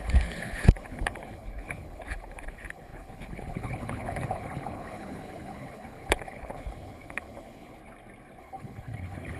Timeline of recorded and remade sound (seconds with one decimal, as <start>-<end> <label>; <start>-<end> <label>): 0.0-7.8 remade; 7.8-8.4 recorded; 8.4-9.4 remade